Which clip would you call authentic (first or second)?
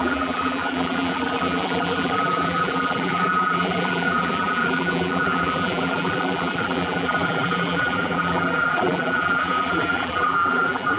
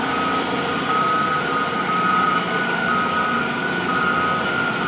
second